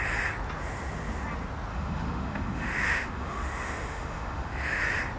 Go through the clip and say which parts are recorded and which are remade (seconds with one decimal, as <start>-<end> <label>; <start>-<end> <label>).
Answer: 0.0-1.7 recorded; 1.7-4.8 remade; 4.8-5.2 recorded